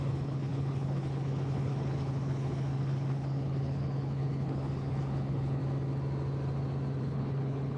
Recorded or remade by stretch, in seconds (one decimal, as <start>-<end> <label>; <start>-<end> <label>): 0.0-5.6 remade; 5.6-7.0 recorded; 7.0-7.8 remade